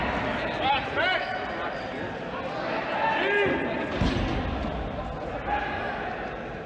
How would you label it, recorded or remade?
recorded